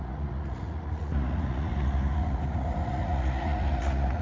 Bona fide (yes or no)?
no